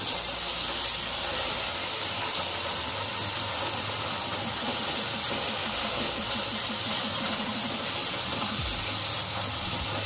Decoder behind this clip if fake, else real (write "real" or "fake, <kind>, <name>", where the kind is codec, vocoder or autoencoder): real